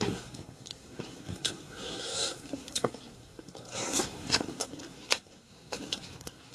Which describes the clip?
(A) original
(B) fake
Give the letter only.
B